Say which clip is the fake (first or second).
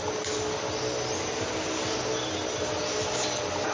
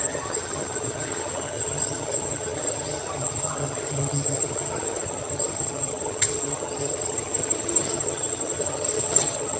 second